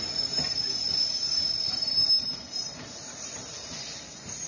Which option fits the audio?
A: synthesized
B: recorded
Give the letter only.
B